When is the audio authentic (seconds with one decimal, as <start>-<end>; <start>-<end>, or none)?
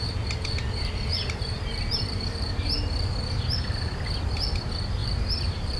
0.0-1.1; 3.1-5.0